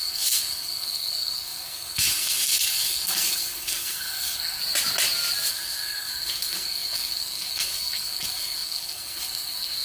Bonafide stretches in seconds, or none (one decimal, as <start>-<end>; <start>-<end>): 4.6-5.5